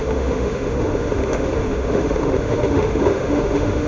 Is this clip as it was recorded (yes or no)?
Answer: no